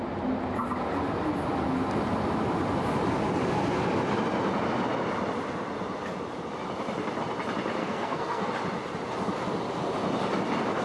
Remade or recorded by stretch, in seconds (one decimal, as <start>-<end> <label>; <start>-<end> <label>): 0.0-7.8 recorded; 7.8-8.5 remade; 8.5-10.8 recorded